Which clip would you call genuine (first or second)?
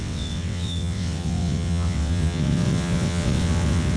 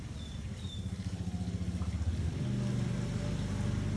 second